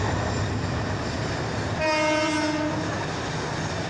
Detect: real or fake real